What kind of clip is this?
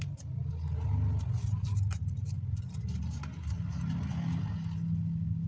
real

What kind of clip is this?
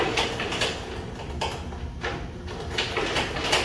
real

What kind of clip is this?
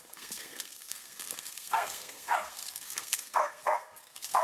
fake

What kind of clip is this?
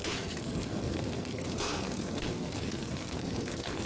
fake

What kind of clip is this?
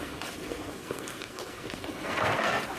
fake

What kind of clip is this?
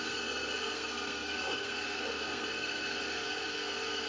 fake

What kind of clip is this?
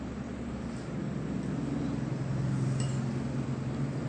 real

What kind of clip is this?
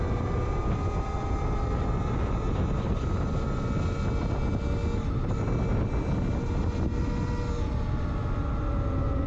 real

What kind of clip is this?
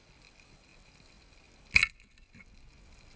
real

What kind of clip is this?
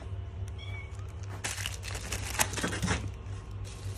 real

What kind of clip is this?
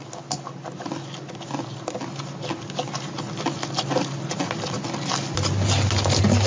real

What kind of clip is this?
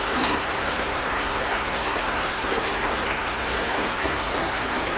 fake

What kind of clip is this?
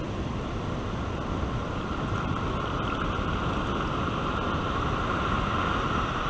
real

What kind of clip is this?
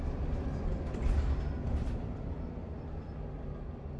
real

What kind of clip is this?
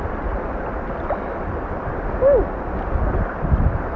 real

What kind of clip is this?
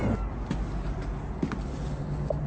real